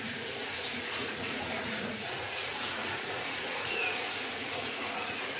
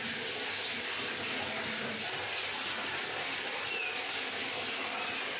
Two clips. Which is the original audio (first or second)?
second